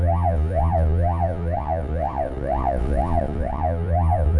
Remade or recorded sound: remade